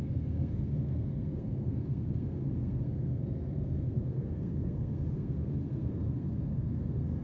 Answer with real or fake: fake